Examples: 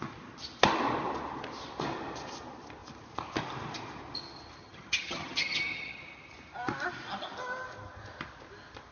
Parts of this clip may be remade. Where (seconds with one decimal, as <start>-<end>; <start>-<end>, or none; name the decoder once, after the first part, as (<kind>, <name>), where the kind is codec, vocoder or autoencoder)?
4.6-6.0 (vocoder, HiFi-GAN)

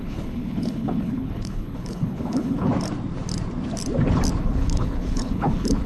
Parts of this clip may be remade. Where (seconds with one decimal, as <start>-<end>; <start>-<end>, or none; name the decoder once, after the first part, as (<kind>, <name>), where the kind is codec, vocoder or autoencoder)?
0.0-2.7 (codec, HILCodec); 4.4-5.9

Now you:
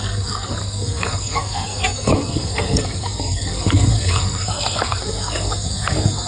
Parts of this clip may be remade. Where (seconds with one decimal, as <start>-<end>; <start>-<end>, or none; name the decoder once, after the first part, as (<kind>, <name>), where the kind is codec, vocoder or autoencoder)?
0.0-6.3 (codec, SNAC)